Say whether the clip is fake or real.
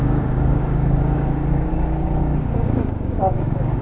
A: fake